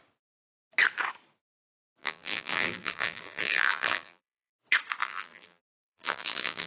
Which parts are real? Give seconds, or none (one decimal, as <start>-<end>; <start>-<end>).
0.0-2.0; 4.5-5.0